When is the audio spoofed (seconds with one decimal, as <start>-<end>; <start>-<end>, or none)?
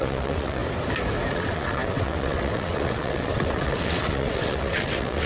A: 0.0-0.6; 1.3-5.3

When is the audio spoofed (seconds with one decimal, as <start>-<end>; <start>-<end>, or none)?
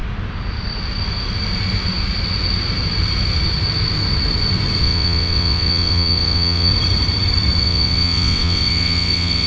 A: 4.8-6.7; 7.6-9.5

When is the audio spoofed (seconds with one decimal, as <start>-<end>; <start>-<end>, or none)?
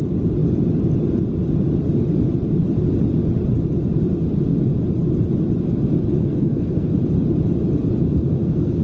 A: 6.2-6.9; 8.1-8.8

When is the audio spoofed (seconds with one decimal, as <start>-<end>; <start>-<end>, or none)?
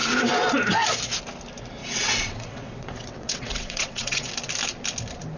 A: 1.8-4.3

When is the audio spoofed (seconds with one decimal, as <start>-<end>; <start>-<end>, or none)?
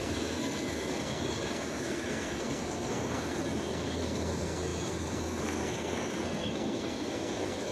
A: 0.0-7.7